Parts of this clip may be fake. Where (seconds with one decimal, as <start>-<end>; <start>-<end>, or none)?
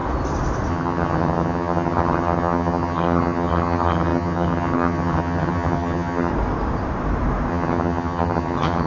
0.7-6.3; 7.5-8.9